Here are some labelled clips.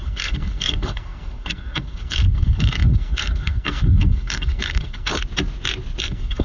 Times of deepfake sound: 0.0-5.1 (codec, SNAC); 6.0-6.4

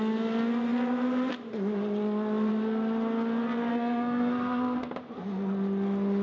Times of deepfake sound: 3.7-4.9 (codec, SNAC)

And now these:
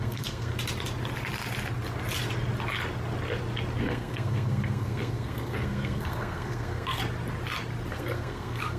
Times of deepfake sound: 0.0-0.5 (codec, SNAC); 3.8-7.0; 7.9-8.8

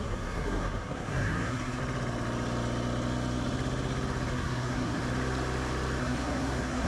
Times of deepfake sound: 0.0-1.8 (codec, SNAC); 4.3-5.0; 6.0-6.9

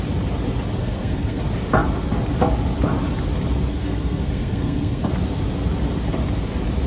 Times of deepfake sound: 0.8-1.4 (codec, SNAC); 3.7-5.1

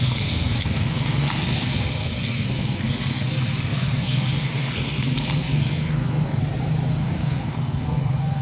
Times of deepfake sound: 0.0-6.4 (codec, SNAC); 6.9-8.4

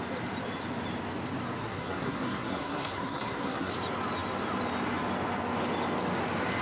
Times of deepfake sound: 1.6-3.7 (codec, SNAC)

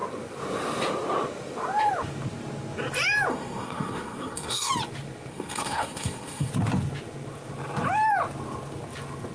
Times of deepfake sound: 3.3-4.7 (codec, SNAC); 5.3-6.5